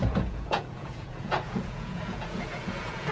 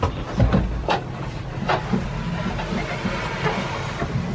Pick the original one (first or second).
second